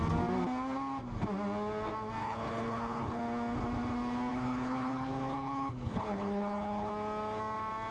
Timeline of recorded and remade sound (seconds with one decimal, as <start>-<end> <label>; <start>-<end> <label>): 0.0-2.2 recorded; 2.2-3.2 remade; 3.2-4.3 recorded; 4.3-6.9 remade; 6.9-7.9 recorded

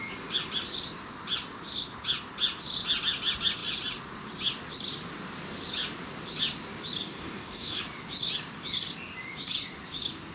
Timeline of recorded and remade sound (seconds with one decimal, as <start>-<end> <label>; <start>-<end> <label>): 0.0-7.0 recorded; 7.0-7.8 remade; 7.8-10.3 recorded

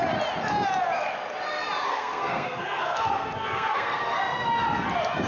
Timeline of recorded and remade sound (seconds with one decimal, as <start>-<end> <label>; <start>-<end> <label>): 0.0-1.9 recorded; 1.9-4.2 remade; 4.2-5.3 recorded

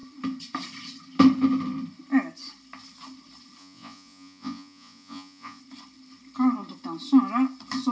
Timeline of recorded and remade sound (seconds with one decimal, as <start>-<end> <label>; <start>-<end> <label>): 0.0-3.6 recorded; 3.6-5.6 remade; 5.6-7.9 recorded

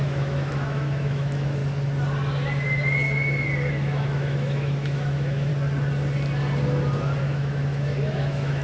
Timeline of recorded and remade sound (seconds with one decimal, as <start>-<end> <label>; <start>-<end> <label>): 0.0-1.6 remade; 1.6-3.7 recorded; 3.7-5.5 remade; 5.5-7.2 recorded; 7.2-8.6 remade

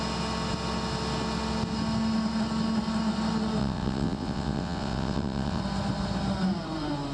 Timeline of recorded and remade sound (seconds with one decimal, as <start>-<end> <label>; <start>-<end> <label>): 0.0-3.6 recorded; 3.6-5.6 remade; 5.6-7.1 recorded